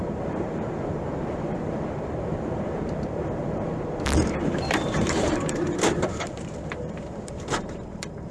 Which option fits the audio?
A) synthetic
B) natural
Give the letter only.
A